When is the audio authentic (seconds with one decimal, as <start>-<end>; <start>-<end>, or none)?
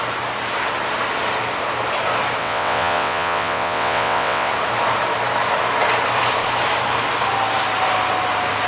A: 0.0-2.4; 4.5-8.7